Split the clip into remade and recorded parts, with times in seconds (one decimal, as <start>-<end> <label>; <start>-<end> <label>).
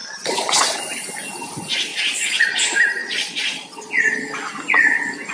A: 0.0-0.8 remade; 0.8-1.9 recorded; 1.9-2.6 remade; 2.6-3.0 recorded; 3.0-4.0 remade; 4.0-5.3 recorded